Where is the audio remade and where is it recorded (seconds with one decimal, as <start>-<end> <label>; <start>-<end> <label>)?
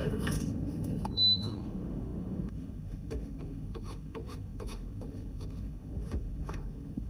0.0-7.1 remade